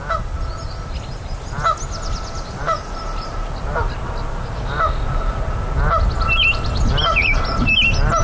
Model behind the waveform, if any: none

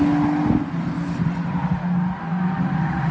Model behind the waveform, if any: none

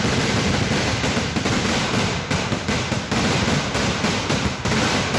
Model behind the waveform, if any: none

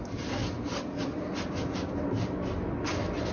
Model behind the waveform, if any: none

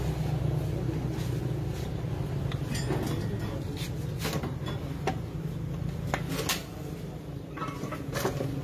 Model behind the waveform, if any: none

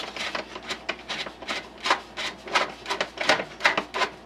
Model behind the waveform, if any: none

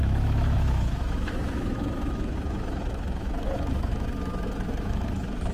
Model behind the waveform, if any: autoencoder, DAC-VAE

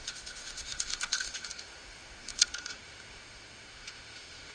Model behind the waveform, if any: autoencoder, DAC-VAE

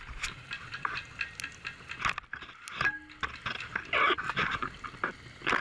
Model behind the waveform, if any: none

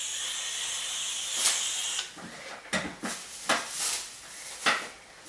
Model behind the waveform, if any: none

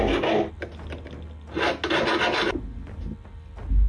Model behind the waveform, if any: none